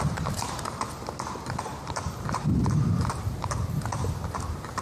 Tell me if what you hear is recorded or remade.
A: recorded